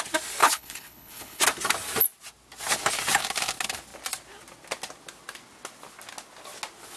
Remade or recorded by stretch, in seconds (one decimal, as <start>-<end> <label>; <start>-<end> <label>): 0.0-0.4 recorded; 0.4-1.4 remade; 1.4-7.0 recorded